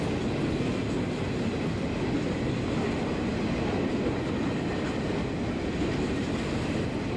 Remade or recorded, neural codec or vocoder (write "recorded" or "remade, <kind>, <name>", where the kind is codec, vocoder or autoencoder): recorded